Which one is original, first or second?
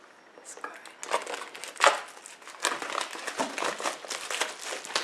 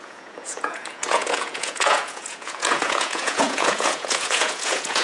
first